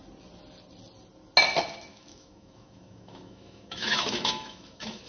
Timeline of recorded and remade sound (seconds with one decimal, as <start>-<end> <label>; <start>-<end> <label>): 0.0-1.9 recorded; 1.9-5.1 remade